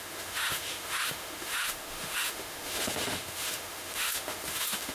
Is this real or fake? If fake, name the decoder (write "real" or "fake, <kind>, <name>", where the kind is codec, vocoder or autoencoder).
fake, autoencoder, DAC-VAE